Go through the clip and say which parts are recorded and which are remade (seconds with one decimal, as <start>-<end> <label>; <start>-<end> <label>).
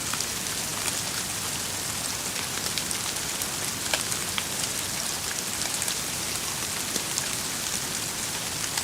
0.0-8.8 recorded